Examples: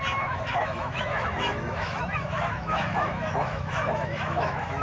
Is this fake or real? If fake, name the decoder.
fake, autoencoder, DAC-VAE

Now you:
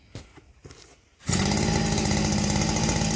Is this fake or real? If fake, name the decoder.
real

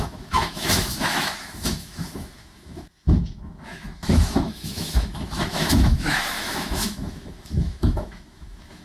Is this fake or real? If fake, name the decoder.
fake, autoencoder, DAC-VAE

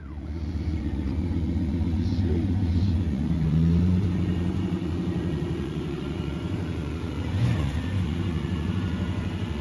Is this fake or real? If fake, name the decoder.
fake, vocoder, Vocos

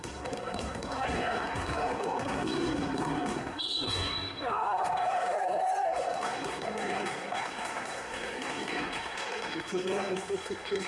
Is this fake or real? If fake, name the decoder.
fake, codec, SNAC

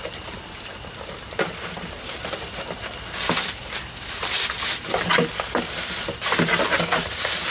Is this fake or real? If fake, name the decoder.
real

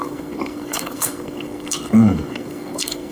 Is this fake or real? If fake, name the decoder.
fake, codec, SNAC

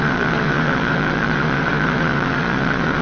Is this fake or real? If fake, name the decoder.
fake, vocoder, Vocos